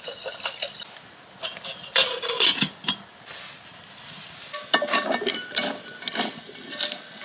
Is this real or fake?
real